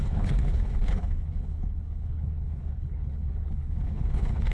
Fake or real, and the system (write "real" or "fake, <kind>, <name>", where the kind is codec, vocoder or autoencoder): fake, codec, HILCodec